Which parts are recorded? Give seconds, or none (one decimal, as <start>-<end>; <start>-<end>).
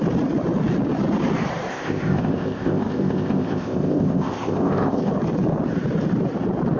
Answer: 0.0-1.7; 5.1-6.8